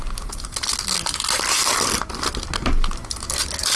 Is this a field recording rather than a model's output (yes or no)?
yes